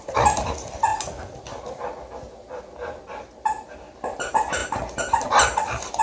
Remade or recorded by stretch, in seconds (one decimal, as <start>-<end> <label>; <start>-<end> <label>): 0.0-6.0 recorded